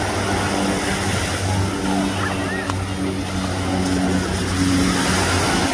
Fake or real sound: real